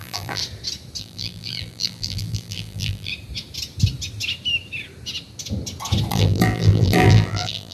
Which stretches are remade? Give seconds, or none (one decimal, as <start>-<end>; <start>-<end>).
0.0-0.4; 1.0-3.1; 6.1-7.7